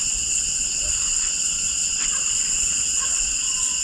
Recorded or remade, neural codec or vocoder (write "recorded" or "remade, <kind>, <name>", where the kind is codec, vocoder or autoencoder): remade, vocoder, WaveNeXt